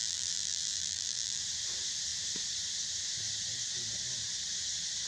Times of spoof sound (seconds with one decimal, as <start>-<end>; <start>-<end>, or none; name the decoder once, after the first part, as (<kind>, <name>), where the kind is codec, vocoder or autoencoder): 0.0-1.4 (vocoder, BigVGAN v2)